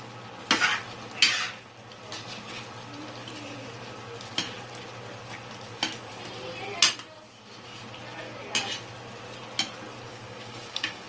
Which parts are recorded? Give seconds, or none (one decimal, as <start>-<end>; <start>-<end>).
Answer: 0.0-10.1